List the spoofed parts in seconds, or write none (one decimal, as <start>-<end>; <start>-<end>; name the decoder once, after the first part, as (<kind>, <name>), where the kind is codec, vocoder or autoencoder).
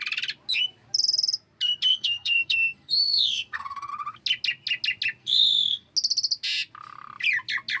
1.9-3.9 (codec, SNAC); 5.2-5.9